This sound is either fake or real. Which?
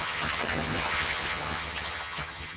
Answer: fake